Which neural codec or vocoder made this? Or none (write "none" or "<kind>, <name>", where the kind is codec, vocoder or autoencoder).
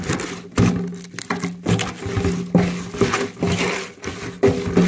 none